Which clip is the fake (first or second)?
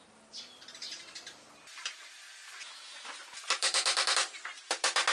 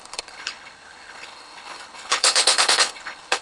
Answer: second